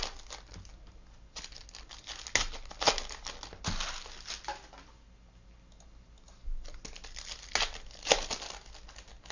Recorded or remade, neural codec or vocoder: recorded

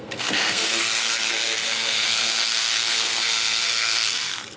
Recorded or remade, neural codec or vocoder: remade, codec, SNAC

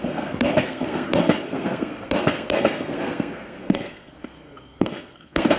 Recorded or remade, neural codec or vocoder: remade, codec, SNAC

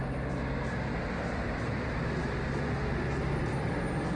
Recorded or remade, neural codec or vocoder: recorded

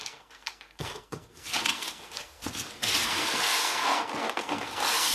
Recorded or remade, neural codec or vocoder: remade, codec, SNAC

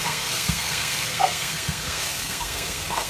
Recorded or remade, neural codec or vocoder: remade, codec, SNAC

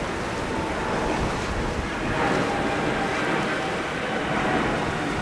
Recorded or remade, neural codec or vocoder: recorded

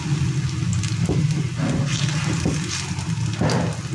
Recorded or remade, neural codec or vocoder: recorded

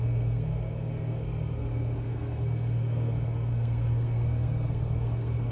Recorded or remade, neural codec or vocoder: remade, codec, SNAC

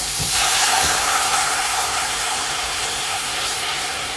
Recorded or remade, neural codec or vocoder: remade, codec, SNAC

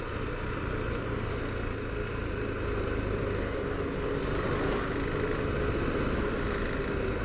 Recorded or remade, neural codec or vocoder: recorded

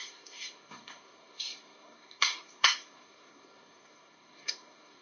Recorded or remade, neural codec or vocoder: remade, codec, SNAC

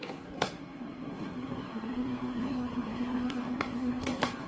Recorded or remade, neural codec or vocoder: remade, codec, SNAC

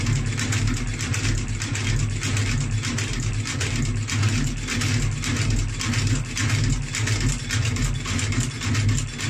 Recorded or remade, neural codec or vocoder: recorded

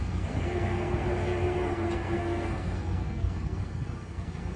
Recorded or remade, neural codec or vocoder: remade, codec, SNAC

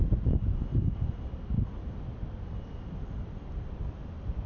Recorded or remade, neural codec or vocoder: recorded